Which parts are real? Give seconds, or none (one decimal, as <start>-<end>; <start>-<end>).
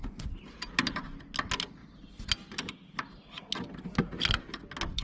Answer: 0.7-5.0